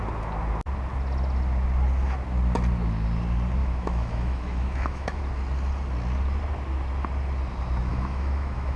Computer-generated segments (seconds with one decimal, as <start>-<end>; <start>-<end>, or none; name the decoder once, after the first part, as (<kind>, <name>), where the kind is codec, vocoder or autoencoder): 3.6-5.2 (autoencoder, DAC-VAE); 7.9-8.8